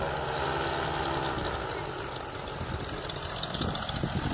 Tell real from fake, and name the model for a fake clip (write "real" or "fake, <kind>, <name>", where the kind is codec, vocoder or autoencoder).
real